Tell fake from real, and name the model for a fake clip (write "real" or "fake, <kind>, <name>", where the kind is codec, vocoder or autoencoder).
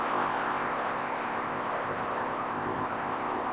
fake, codec, ZipCodec